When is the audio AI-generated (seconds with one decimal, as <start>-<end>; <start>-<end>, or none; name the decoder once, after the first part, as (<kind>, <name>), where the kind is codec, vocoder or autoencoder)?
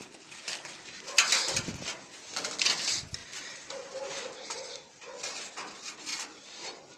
none